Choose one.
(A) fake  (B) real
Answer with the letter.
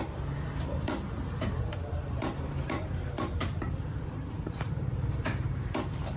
A